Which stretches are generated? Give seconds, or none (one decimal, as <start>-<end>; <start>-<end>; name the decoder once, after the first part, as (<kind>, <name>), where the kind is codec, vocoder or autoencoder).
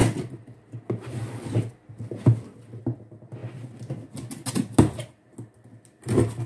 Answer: none